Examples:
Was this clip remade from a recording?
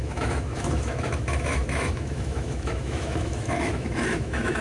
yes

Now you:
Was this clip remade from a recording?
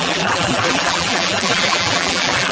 yes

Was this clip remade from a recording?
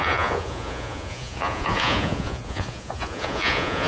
yes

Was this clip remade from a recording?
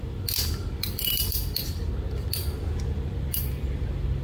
no